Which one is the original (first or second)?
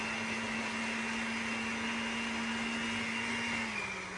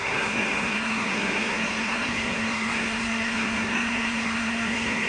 first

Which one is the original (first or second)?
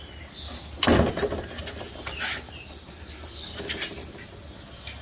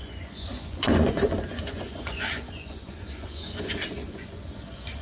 first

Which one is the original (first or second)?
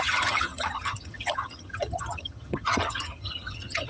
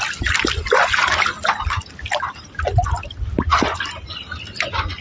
second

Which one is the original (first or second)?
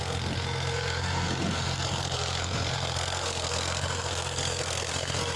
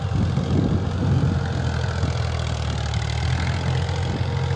second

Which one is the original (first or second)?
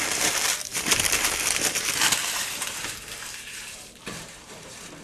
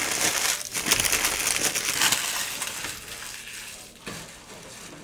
second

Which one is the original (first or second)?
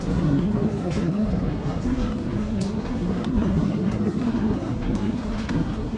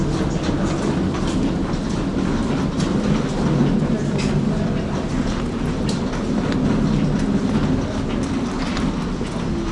second